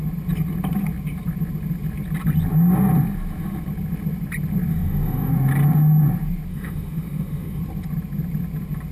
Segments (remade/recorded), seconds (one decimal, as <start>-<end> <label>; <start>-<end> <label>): 0.0-4.7 recorded; 4.7-5.3 remade; 5.3-6.5 recorded; 6.5-7.6 remade; 7.6-8.9 recorded